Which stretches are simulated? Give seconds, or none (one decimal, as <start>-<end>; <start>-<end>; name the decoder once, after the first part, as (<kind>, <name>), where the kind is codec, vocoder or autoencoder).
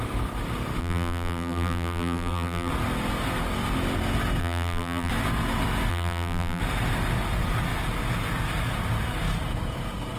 0.8-2.7 (vocoder, BigVGAN v2); 4.4-5.1; 5.9-6.6